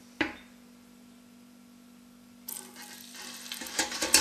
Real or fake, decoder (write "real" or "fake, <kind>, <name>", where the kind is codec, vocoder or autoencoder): fake, vocoder, BigVGAN v2